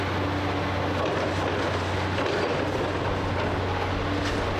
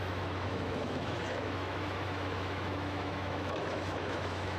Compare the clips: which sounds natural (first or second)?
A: first